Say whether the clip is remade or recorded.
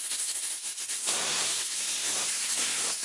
remade